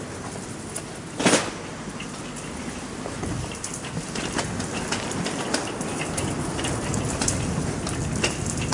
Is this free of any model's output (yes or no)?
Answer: yes